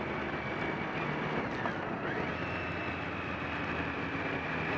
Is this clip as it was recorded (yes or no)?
yes